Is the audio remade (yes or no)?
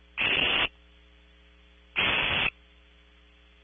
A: no